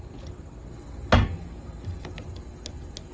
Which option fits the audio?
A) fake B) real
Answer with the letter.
B